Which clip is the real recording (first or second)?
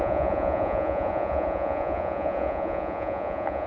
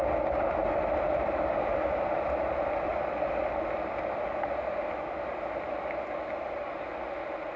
second